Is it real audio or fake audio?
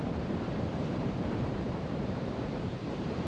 fake